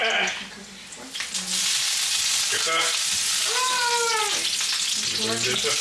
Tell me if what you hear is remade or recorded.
recorded